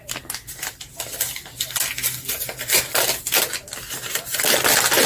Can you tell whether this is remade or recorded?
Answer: recorded